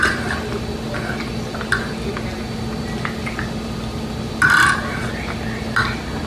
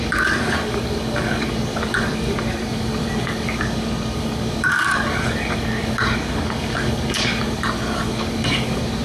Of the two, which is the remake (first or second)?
second